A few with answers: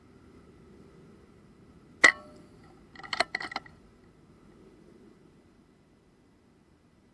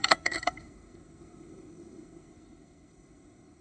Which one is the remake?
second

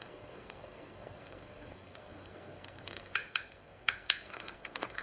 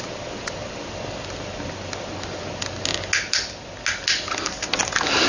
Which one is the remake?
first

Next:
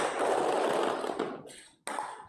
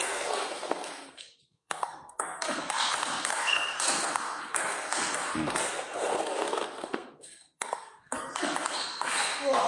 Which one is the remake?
second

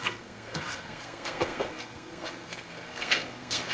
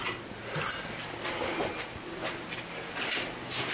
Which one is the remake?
first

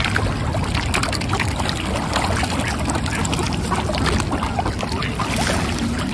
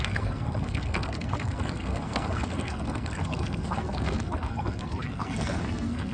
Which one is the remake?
second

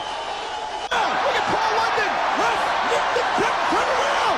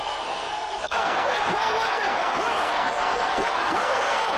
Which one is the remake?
second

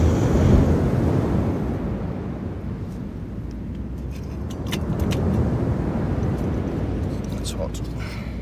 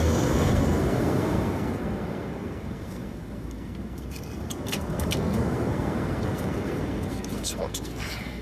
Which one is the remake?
second